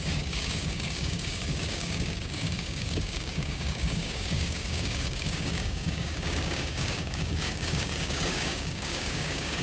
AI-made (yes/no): yes